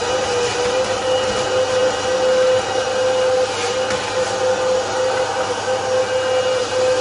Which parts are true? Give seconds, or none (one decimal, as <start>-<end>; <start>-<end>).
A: 0.0-7.0

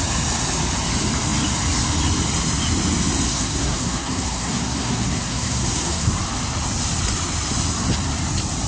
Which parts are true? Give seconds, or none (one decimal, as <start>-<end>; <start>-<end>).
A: 0.0-3.3; 6.1-8.7

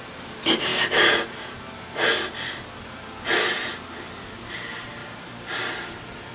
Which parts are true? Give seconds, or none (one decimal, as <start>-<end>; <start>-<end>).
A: 0.0-5.0